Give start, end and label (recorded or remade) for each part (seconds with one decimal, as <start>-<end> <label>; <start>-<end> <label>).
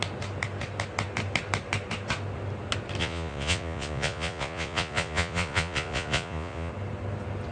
0.0-3.0 recorded; 3.0-6.7 remade; 6.7-7.5 recorded